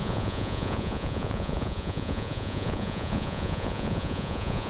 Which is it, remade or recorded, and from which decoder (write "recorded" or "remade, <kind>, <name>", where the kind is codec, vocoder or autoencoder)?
remade, vocoder, Vocos